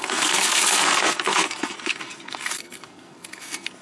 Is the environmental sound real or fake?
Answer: fake